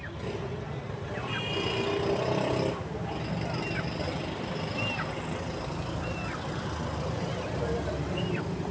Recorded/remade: recorded